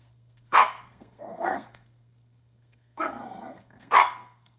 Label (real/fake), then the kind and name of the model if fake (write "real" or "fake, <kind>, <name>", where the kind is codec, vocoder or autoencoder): fake, codec, SNAC